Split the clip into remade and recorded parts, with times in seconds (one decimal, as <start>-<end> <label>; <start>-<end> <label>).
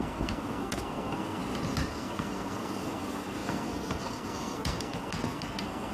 0.0-1.4 remade; 1.4-1.9 recorded; 1.9-5.9 remade